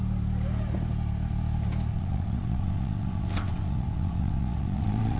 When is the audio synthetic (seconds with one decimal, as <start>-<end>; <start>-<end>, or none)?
1.9-5.2